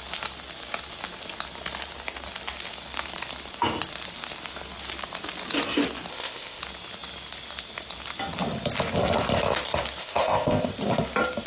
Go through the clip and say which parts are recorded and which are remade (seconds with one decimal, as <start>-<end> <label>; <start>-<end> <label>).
0.0-6.1 recorded; 6.1-6.6 remade; 6.6-10.0 recorded; 10.0-10.7 remade; 10.7-11.5 recorded